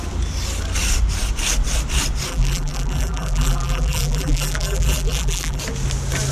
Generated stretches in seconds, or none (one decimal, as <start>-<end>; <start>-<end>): 2.3-5.6